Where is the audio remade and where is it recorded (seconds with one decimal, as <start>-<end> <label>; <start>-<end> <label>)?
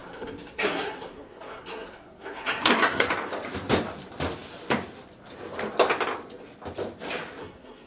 0.0-3.1 remade; 3.1-7.4 recorded; 7.4-7.9 remade